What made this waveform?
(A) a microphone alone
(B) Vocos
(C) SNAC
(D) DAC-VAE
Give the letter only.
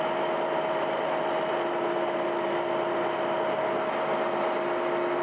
A